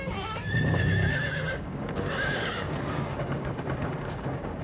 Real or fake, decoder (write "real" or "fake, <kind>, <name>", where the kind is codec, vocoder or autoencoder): fake, codec, DAC